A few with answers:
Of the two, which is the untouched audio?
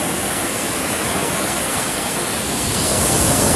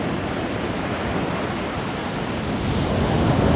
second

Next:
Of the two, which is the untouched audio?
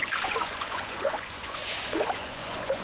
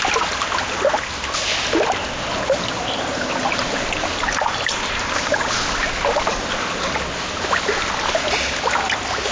second